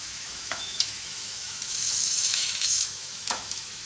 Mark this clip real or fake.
fake